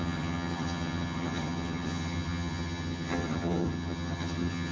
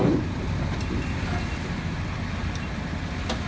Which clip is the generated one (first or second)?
first